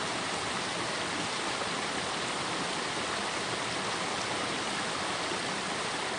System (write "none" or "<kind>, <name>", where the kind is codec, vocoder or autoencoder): none